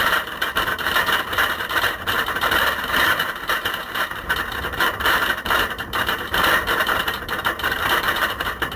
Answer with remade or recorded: remade